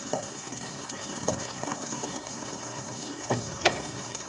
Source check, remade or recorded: remade